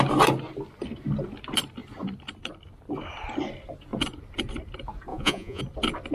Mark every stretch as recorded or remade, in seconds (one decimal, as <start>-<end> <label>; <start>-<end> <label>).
0.0-5.1 recorded; 5.1-5.6 remade; 5.6-6.1 recorded